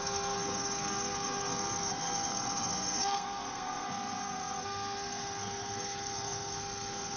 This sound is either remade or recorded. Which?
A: remade